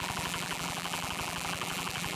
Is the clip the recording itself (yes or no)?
no